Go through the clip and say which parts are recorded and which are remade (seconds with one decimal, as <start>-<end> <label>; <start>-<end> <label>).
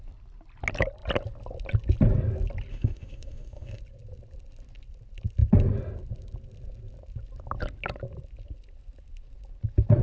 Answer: 0.0-2.7 recorded; 2.7-3.8 remade; 3.8-10.0 recorded